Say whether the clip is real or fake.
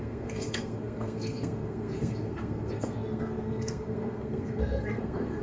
fake